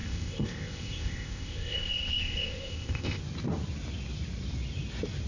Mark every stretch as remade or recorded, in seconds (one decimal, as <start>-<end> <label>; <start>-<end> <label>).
0.0-3.2 remade; 3.2-5.3 recorded